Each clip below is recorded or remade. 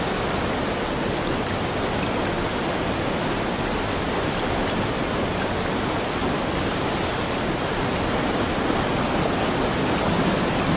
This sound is recorded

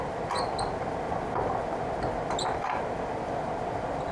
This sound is recorded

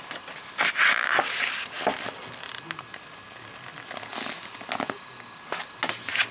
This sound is recorded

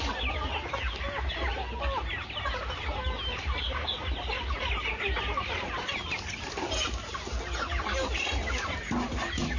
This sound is recorded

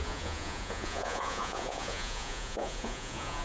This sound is remade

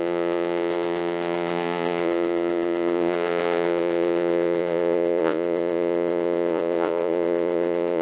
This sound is remade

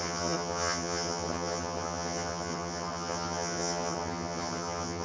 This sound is remade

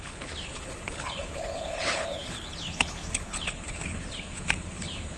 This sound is remade